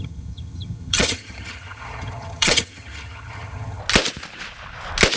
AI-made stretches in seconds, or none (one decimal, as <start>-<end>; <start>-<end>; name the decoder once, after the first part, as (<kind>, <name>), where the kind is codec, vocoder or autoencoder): 0.0-3.8 (vocoder, HiFi-GAN)